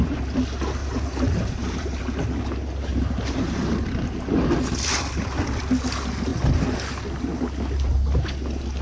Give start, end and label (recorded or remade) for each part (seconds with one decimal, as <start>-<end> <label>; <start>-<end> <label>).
0.0-0.8 recorded; 0.8-2.0 remade; 2.0-2.9 recorded; 2.9-4.1 remade; 4.1-8.8 recorded